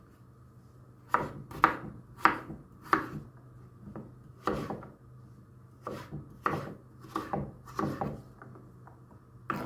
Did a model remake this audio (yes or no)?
no